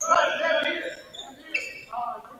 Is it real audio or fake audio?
real